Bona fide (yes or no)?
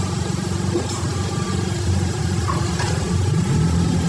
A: yes